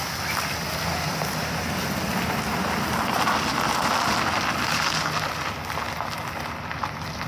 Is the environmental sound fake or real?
real